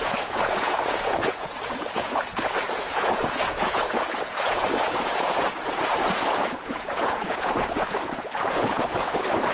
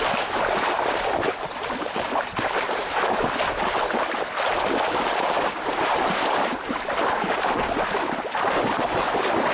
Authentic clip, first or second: second